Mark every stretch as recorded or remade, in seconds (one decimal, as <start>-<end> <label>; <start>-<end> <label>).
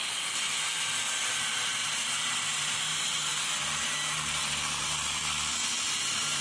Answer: 0.0-1.3 recorded; 1.3-5.2 remade; 5.2-5.8 recorded; 5.8-6.4 remade